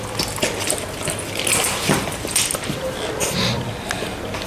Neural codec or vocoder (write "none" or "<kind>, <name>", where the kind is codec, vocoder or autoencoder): none